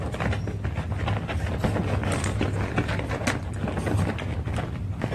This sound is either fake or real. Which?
real